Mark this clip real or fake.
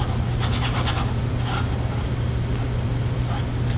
real